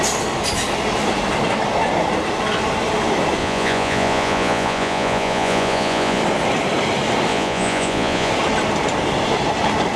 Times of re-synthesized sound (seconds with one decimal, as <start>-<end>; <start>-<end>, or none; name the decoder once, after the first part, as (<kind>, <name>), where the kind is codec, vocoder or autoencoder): 3.4-6.2 (vocoder, Vocos); 7.3-8.3